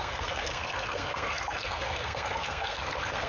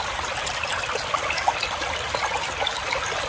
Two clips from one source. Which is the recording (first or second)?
second